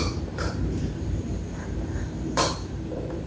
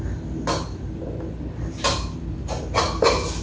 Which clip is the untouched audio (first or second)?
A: second